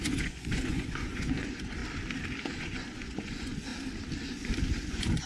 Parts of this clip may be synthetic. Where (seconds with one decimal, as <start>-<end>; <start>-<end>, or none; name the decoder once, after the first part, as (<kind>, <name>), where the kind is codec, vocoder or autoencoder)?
0.0-1.8 (vocoder, Vocos); 2.4-3.7; 4.7-5.3

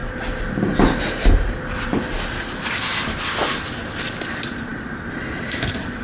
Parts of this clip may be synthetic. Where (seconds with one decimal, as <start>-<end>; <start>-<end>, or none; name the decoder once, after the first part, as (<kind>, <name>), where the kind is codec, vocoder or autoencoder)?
none

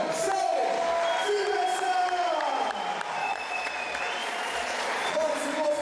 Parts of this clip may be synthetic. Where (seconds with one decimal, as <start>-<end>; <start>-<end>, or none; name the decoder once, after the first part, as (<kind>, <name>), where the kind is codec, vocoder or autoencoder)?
3.2-3.7 (vocoder, Vocos); 4.2-5.3

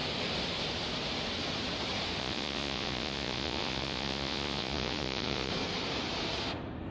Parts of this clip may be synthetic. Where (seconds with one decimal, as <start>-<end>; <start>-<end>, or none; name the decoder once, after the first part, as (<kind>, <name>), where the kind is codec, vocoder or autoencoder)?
2.2-5.5 (vocoder, Vocos)